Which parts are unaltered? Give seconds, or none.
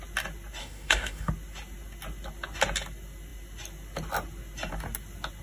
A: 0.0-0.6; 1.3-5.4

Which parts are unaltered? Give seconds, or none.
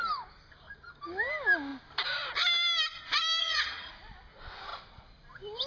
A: 0.0-3.4; 3.9-5.7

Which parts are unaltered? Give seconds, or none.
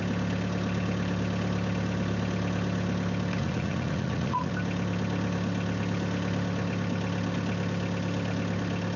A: 0.0-3.4; 4.5-9.0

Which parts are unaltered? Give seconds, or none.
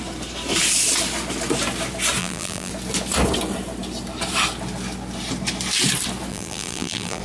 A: 0.0-2.2; 2.7-6.3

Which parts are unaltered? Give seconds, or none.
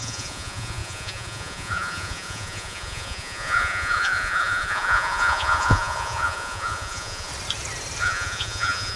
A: 7.3-8.0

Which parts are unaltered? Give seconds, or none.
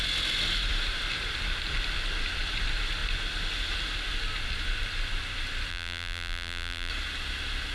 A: 0.0-5.7; 6.9-7.7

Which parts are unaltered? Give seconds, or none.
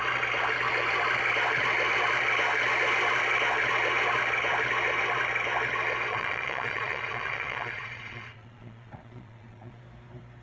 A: 0.0-6.1; 9.8-10.4